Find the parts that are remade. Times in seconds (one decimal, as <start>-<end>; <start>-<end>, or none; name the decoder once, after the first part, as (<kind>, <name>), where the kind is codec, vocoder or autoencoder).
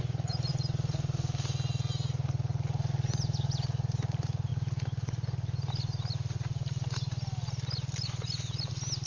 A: none